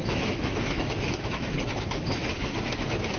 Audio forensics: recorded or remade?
remade